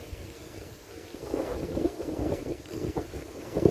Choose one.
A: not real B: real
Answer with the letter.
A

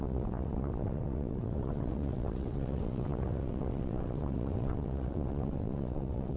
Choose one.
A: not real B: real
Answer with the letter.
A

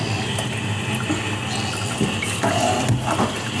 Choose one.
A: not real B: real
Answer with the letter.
B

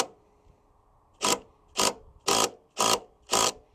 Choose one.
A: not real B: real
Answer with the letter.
B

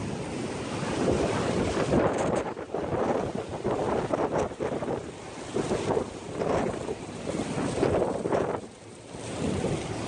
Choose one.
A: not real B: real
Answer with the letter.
B